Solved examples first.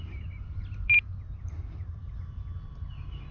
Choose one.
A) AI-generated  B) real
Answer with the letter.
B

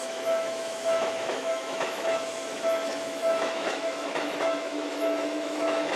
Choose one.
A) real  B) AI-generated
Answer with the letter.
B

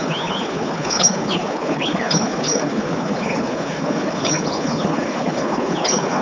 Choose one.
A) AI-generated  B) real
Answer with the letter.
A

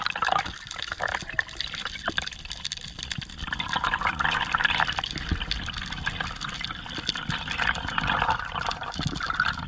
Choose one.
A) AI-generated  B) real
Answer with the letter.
B